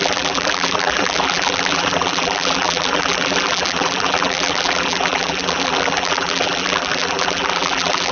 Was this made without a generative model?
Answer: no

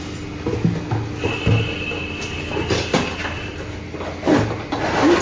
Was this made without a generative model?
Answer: yes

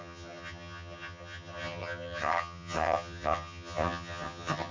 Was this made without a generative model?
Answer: no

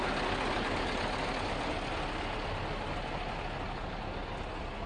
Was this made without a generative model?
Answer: yes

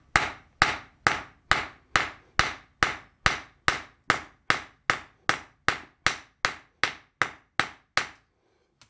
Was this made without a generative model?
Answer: yes